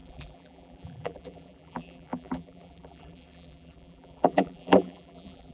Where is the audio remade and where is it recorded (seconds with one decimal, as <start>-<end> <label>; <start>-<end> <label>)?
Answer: 0.0-5.5 remade